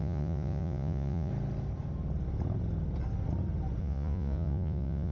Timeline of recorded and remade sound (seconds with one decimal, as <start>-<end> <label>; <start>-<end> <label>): 0.0-1.3 remade; 1.3-3.8 recorded; 3.8-5.1 remade